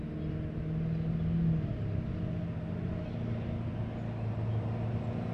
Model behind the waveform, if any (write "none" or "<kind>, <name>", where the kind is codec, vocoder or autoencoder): none